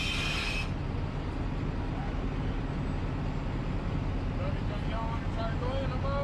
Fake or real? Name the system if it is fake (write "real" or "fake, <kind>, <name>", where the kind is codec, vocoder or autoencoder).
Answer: real